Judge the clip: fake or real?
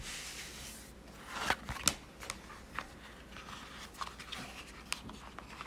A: real